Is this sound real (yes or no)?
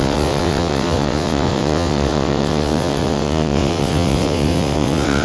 no